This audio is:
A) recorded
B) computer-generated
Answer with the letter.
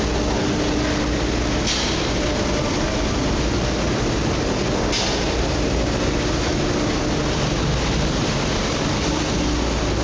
A